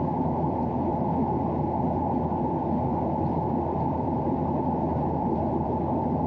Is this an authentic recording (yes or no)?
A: no